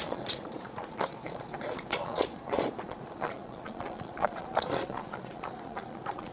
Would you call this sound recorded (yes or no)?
no